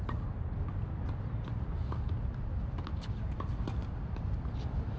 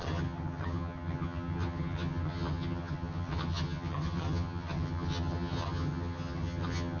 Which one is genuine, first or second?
first